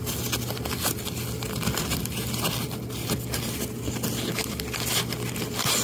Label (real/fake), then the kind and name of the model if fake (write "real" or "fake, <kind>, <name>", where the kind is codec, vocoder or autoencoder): real